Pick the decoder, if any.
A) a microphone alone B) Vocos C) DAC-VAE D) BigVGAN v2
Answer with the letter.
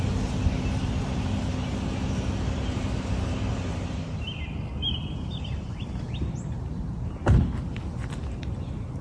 A